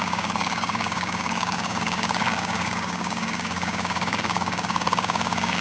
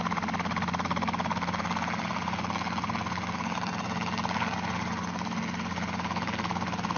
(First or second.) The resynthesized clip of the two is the first